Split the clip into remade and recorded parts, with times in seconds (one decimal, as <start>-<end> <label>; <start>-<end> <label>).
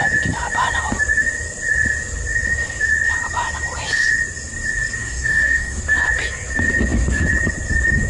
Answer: 0.0-5.0 recorded; 5.0-5.8 remade; 5.8-8.1 recorded